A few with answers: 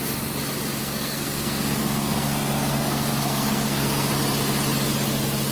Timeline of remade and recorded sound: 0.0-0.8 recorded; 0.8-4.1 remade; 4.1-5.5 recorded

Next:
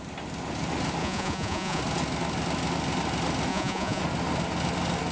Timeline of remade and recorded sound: 0.0-1.0 recorded; 1.0-1.8 remade; 1.8-3.5 recorded; 3.5-4.0 remade; 4.0-5.1 recorded